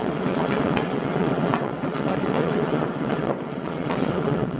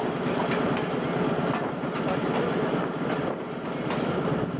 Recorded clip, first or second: second